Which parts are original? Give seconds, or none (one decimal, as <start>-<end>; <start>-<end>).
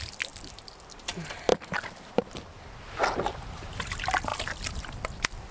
0.0-5.5